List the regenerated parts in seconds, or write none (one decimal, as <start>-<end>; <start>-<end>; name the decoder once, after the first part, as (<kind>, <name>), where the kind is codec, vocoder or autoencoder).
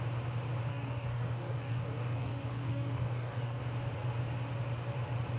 0.7-3.6 (codec, DAC)